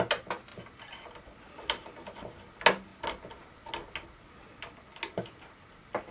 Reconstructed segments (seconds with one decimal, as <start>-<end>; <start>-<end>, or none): none